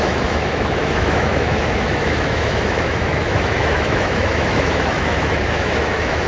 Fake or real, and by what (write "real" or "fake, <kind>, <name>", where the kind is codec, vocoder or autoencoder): fake, autoencoder, DAC-VAE